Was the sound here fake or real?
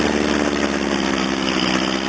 real